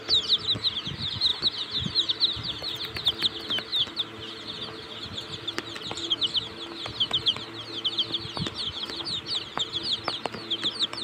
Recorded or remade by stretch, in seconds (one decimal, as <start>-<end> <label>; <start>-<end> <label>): 0.0-11.0 recorded